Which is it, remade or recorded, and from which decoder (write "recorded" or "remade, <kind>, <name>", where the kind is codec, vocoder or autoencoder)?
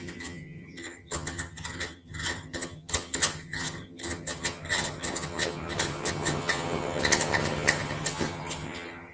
remade, vocoder, HiFi-GAN